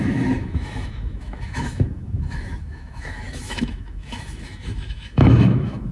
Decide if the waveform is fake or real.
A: fake